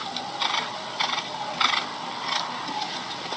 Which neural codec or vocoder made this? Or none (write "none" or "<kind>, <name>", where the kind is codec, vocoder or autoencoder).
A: none